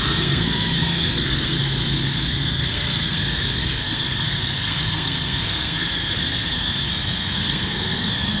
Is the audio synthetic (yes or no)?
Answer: yes